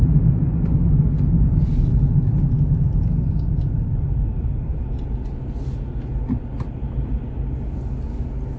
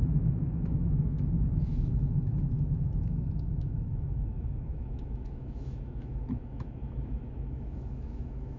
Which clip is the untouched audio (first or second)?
first